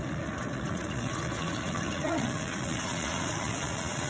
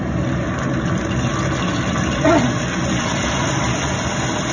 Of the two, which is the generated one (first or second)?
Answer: first